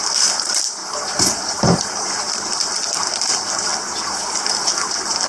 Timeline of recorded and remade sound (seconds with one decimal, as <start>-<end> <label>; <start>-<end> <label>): 0.0-5.3 recorded